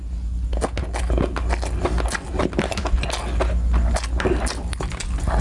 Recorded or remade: recorded